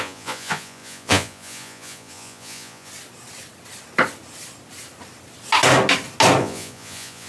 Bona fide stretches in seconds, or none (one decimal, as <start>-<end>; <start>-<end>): 2.9-6.4